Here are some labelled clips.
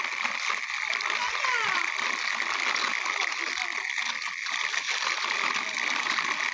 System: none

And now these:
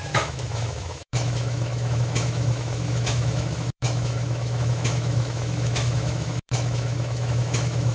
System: autoencoder, DAC-VAE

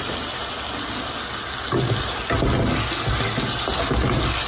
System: none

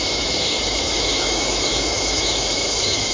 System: autoencoder, DAC-VAE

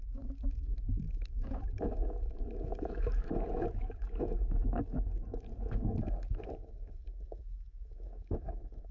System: autoencoder, DAC-VAE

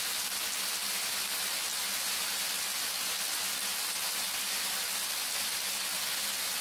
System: none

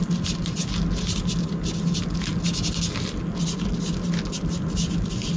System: none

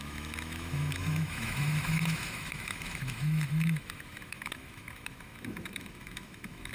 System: autoencoder, DAC-VAE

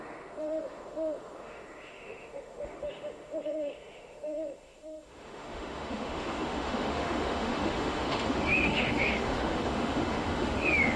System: autoencoder, DAC-VAE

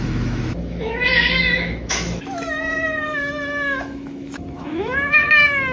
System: autoencoder, DAC-VAE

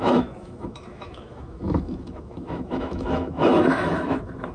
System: autoencoder, DAC-VAE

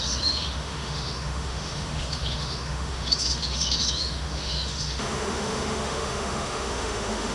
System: autoencoder, DAC-VAE